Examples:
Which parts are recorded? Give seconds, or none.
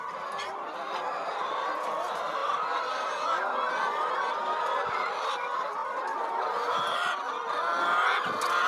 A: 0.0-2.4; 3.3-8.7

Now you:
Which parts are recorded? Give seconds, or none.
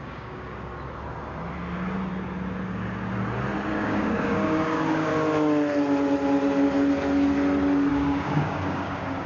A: 0.7-3.7; 5.1-7.9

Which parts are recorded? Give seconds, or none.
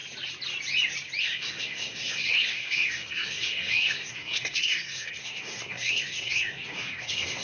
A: 0.0-1.2